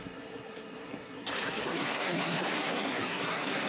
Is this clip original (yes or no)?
no